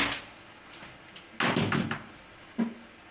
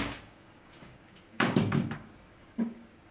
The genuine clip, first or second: first